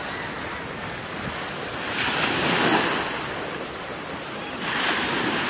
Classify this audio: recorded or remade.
recorded